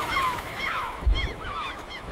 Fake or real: fake